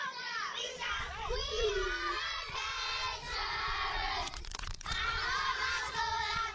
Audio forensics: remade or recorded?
remade